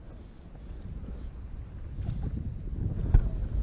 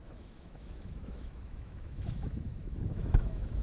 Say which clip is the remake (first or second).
second